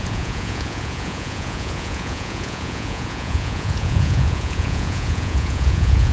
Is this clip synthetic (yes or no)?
yes